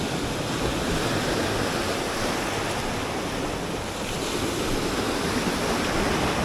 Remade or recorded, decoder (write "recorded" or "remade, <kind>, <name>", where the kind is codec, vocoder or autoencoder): recorded